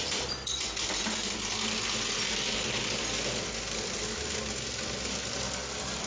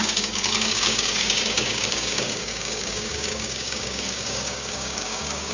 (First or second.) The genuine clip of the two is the first